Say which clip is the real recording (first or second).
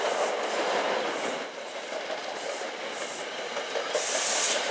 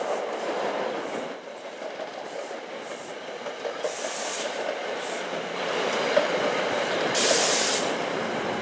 first